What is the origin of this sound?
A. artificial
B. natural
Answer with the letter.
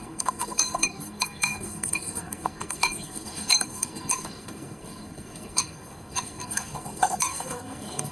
A